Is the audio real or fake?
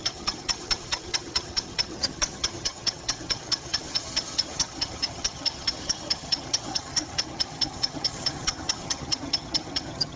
fake